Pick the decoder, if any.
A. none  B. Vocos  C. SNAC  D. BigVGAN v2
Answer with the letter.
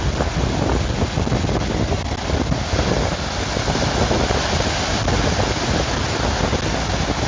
A